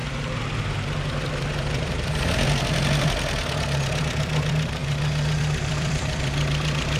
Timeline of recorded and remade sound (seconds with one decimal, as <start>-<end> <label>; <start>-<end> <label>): 0.0-4.8 remade; 4.8-5.4 recorded; 5.4-7.0 remade

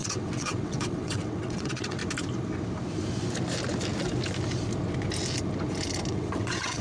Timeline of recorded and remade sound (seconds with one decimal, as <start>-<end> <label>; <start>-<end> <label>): 0.0-2.0 remade; 2.0-6.1 recorded; 6.1-6.8 remade

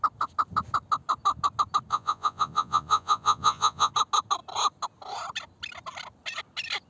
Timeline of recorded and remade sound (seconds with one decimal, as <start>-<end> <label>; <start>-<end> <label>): 0.0-1.9 recorded; 1.9-3.9 remade; 3.9-6.9 recorded

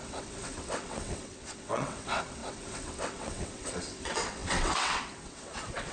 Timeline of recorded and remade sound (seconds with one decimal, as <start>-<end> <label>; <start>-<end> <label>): 0.0-5.9 remade

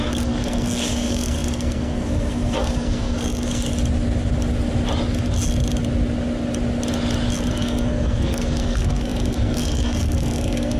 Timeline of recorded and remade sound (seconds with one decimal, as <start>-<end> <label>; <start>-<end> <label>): 0.0-3.7 remade; 3.7-7.5 recorded; 7.5-10.8 remade